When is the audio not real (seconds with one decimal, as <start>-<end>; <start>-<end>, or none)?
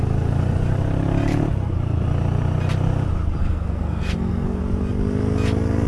3.4-4.6